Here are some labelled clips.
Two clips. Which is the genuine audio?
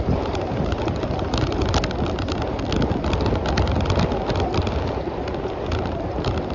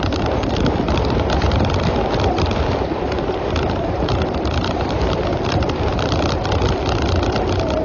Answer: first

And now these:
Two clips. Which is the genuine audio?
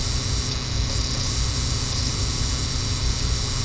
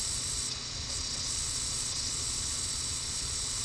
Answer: first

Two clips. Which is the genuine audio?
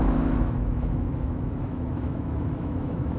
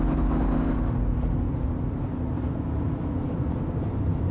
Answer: second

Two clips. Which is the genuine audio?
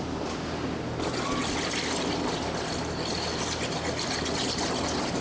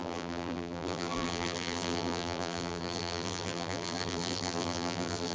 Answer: first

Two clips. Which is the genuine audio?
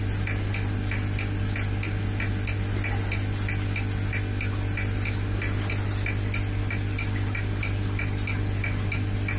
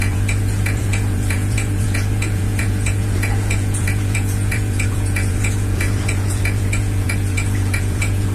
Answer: first